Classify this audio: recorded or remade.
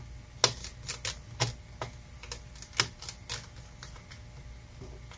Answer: recorded